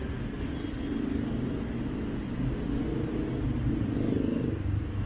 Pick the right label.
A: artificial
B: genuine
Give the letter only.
B